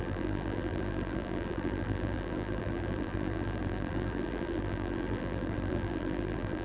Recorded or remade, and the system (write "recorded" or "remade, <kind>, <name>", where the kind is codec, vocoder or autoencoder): remade, vocoder, BigVGAN v2